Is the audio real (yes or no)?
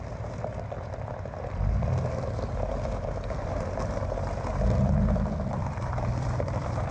no